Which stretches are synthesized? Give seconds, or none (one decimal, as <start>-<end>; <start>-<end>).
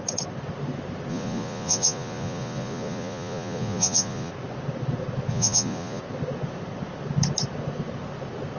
1.1-4.3; 5.3-6.0